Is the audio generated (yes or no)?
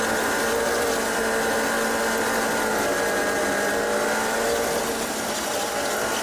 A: no